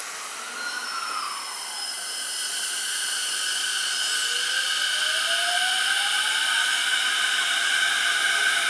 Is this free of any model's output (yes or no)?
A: yes